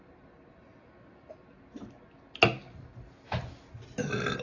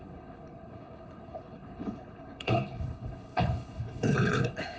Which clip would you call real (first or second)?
first